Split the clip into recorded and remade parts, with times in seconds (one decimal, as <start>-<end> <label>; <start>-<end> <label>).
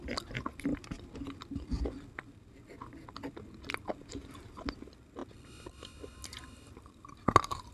0.0-7.7 recorded